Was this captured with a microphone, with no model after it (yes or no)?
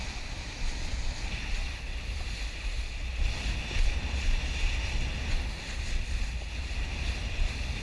yes